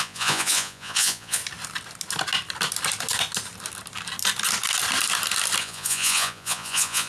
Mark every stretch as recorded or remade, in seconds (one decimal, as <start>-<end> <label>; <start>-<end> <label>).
0.0-1.4 remade; 1.4-5.6 recorded; 5.6-7.1 remade